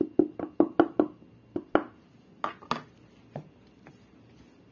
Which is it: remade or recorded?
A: recorded